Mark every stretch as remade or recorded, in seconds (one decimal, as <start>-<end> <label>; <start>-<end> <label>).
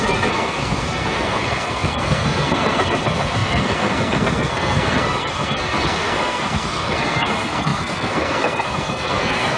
0.0-9.6 remade